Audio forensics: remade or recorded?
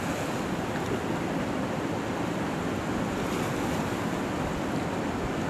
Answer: recorded